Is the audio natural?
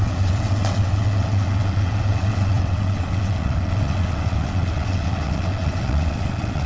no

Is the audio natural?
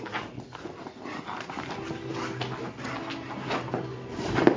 yes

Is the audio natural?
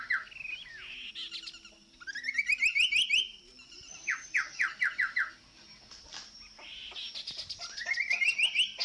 yes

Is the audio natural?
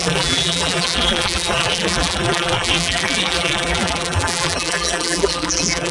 no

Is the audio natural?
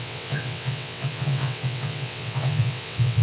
no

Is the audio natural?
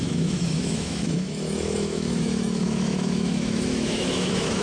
no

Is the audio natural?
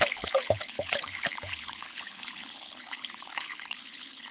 no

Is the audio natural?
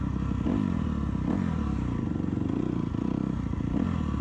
yes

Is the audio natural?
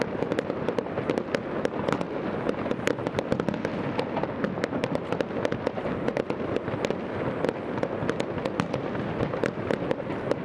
yes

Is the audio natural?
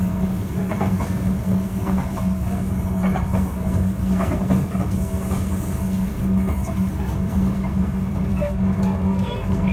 no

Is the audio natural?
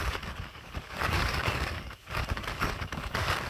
no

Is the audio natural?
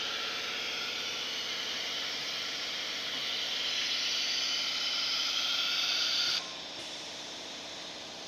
no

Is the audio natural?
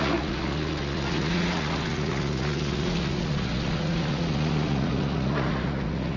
no